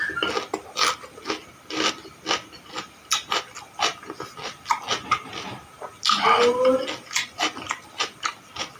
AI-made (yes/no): no